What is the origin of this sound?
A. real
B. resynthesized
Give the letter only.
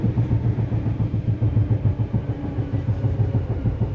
B